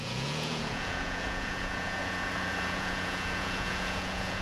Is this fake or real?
fake